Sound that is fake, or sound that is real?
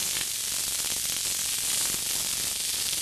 real